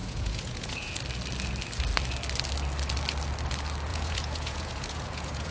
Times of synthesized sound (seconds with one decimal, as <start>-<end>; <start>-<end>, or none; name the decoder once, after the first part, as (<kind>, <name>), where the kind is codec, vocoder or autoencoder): 0.0-0.9 (vocoder, Vocos); 3.9-5.5

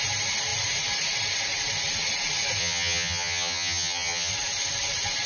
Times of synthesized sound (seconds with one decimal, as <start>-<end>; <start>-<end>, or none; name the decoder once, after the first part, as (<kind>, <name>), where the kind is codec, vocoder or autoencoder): 2.6-4.3 (vocoder, HiFi-GAN)

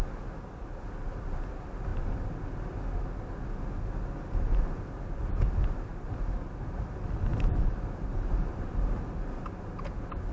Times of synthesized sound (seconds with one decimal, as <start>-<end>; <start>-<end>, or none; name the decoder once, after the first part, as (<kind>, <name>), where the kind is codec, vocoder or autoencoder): 5.9-6.5 (vocoder, BigVGAN v2); 7.3-9.2